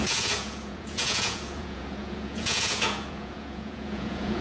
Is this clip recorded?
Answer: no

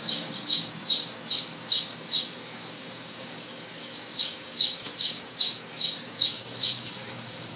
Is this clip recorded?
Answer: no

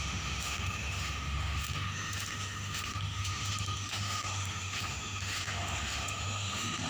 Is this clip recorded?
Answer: no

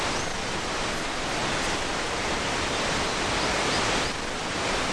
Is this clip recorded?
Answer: yes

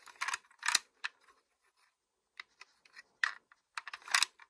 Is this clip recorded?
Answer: yes